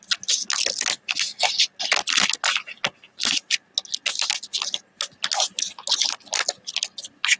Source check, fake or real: real